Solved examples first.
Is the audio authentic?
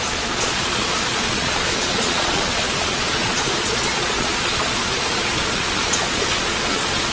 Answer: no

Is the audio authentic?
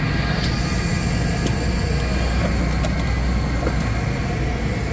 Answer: yes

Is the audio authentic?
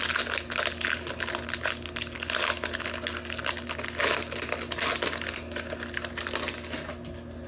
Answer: yes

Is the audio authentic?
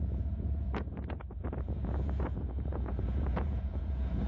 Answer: no